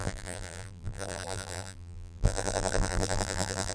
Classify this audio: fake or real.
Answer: fake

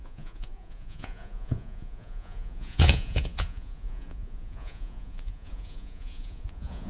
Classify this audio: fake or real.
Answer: fake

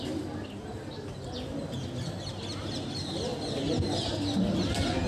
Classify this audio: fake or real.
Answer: real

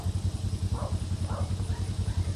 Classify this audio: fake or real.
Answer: real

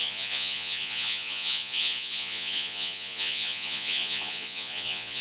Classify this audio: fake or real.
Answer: fake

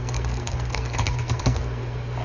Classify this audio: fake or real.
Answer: fake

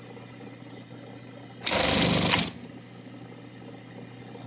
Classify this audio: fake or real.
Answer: real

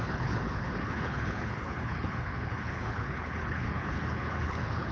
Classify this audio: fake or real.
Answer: fake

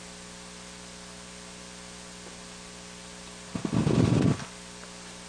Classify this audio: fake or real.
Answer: real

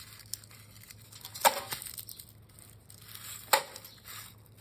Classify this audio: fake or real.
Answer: real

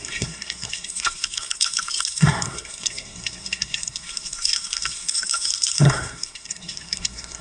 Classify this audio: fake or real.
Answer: fake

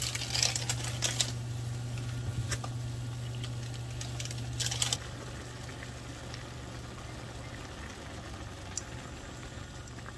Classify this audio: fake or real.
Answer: real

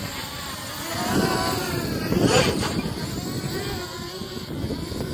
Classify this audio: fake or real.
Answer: real